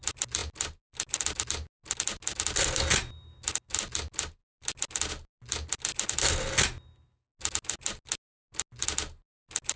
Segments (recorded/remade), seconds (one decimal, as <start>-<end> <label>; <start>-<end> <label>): 0.0-9.8 recorded